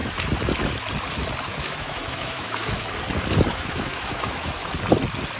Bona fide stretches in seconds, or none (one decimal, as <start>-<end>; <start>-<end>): 0.0-1.5; 2.9-3.5; 4.7-5.4